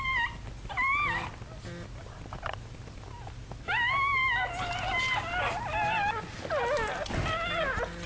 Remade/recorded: recorded